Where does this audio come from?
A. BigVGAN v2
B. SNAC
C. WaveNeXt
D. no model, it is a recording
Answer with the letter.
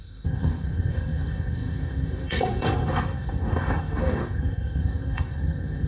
B